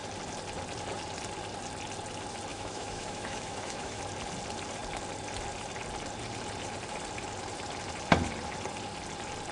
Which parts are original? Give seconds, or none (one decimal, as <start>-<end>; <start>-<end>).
0.0-2.5; 4.0-9.5